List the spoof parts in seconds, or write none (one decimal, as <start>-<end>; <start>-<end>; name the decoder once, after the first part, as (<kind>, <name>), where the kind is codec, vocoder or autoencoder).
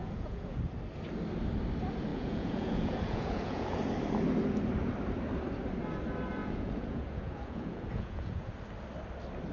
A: 0.0-0.6 (vocoder, Vocos); 2.1-3.8; 6.4-8.5